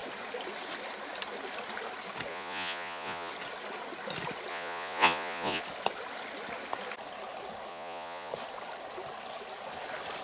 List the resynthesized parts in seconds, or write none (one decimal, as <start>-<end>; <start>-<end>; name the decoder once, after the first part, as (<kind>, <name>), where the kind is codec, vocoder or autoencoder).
2.3-3.3 (vocoder, Vocos); 4.5-5.6; 7.7-8.3